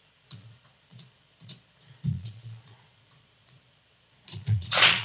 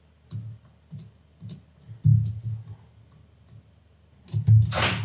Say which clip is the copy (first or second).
first